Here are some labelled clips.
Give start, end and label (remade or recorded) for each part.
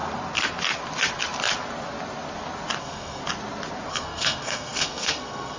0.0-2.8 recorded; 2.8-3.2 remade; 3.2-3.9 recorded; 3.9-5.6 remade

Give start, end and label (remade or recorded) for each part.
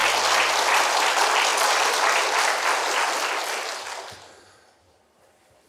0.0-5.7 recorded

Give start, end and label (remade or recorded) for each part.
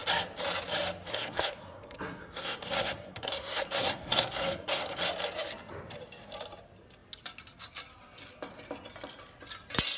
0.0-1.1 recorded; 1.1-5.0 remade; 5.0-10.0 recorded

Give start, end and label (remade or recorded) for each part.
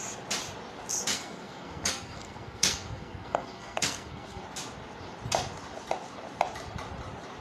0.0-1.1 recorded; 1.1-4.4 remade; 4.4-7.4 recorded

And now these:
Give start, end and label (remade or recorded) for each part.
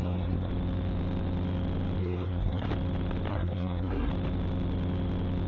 0.0-0.5 remade; 0.5-2.0 recorded; 2.0-2.7 remade; 2.7-3.3 recorded; 3.3-4.1 remade; 4.1-5.5 recorded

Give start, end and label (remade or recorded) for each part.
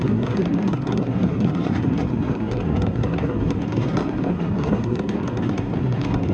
0.0-6.3 remade